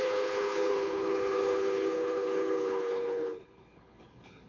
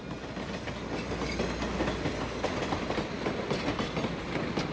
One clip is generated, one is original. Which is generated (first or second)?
first